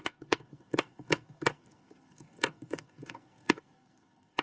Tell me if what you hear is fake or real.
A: fake